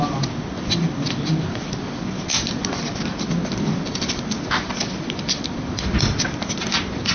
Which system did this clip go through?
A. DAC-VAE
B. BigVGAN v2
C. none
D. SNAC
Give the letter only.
C